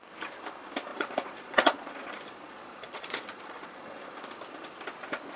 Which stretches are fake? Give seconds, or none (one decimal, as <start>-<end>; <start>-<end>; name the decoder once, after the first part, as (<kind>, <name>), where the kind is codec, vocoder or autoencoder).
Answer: 0.9-4.1 (vocoder, Vocos)